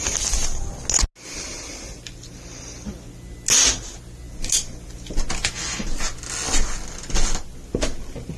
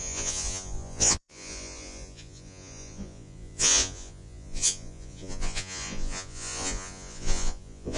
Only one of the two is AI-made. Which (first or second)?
second